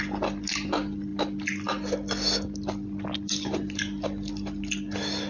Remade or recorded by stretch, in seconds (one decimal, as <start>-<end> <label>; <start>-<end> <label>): 0.0-5.3 recorded